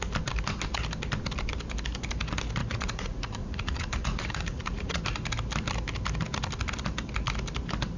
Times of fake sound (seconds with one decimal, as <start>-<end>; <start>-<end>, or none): 2.6-5.0